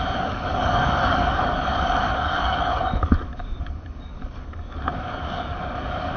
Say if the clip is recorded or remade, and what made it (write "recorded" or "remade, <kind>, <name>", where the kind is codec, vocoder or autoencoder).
remade, codec, DAC